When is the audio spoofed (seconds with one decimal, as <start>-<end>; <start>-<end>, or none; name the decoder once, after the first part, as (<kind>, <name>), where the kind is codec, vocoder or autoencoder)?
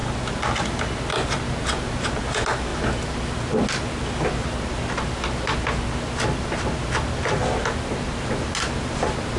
none